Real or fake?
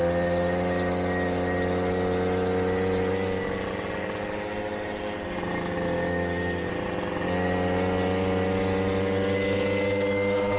real